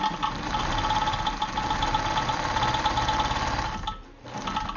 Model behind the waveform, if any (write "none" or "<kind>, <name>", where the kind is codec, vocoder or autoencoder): none